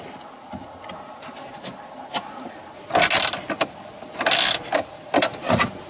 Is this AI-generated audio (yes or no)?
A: no